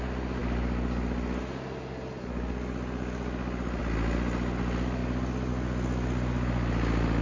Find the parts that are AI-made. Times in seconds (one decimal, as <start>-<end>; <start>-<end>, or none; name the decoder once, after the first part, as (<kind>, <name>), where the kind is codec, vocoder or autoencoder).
none